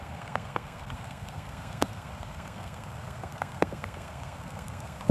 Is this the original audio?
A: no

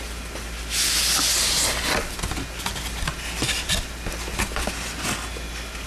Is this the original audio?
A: yes